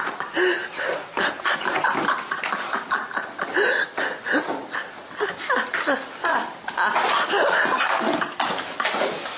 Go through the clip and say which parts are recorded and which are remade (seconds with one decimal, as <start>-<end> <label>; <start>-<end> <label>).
0.0-9.4 recorded